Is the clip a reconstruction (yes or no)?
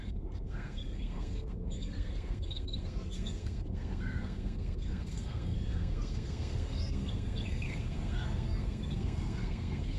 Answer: yes